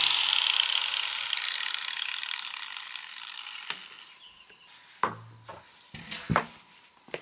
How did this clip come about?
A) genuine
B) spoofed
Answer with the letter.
A